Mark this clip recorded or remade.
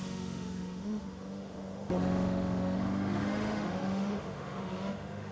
remade